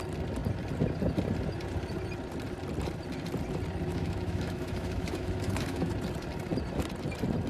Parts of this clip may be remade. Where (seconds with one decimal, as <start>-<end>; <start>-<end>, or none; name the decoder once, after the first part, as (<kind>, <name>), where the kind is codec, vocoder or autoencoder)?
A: 3.9-5.9 (autoencoder, DAC-VAE)

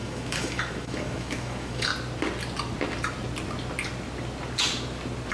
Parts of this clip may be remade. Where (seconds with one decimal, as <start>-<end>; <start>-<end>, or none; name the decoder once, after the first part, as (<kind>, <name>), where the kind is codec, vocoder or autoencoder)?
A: 0.0-1.9 (autoencoder, DAC-VAE)

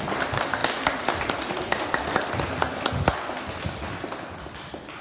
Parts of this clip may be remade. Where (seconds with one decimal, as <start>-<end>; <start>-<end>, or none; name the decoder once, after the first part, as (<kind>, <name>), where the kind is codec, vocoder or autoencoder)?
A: none

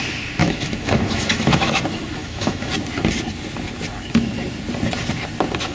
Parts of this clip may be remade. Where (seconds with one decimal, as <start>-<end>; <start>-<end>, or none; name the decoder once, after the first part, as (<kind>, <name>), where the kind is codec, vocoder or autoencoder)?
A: 0.4-1.8 (autoencoder, DAC-VAE); 2.2-2.7

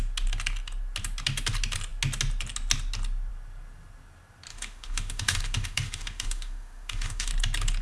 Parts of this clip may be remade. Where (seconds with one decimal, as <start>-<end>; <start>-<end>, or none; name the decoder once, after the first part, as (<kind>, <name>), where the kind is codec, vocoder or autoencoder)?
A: 4.5-7.3 (autoencoder, DAC-VAE)

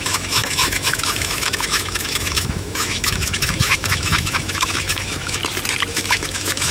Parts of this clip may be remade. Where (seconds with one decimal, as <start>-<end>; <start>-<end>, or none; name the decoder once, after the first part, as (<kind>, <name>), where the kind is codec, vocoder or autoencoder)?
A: 0.0-5.4 (autoencoder, DAC-VAE); 5.9-6.7

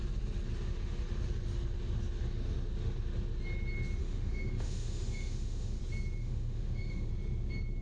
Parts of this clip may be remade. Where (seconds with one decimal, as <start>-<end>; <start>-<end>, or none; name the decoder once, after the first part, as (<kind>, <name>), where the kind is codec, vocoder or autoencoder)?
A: 4.0-5.8 (autoencoder, DAC-VAE); 6.2-7.1

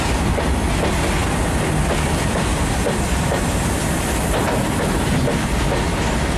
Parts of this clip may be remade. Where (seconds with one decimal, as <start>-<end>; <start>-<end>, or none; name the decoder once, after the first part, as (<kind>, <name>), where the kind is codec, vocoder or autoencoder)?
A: none